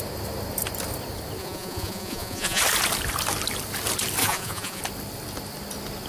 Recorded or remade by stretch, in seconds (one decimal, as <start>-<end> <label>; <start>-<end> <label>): 0.0-1.4 recorded; 1.4-2.6 remade; 2.6-4.2 recorded; 4.2-4.8 remade; 4.8-6.1 recorded